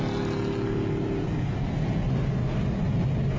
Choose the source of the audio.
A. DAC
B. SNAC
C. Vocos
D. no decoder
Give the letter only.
D